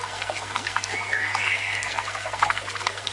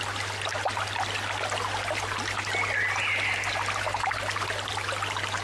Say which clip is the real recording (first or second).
second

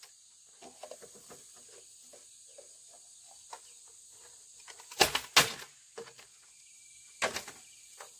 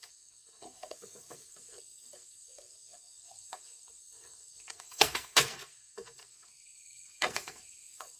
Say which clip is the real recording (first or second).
first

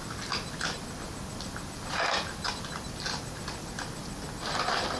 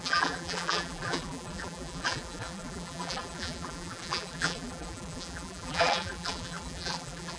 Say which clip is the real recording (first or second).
first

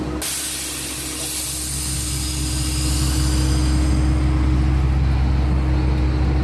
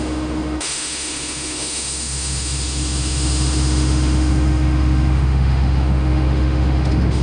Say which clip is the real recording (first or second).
first